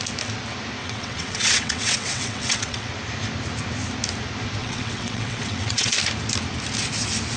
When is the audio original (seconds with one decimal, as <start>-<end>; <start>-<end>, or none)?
0.0-0.8; 2.9-4.6; 5.9-7.4